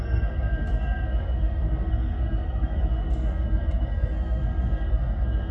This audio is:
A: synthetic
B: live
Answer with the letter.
A